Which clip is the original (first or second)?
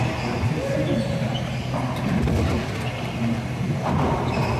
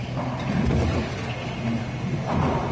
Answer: second